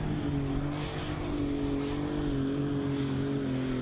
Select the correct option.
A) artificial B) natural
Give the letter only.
B